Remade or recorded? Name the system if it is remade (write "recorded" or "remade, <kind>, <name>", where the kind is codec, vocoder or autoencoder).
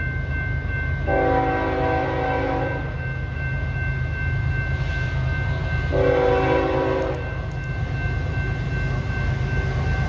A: recorded